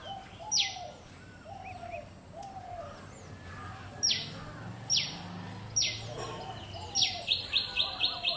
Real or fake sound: real